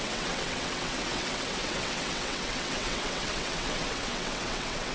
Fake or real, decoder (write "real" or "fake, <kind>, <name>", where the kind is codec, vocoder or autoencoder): fake, vocoder, WaveNeXt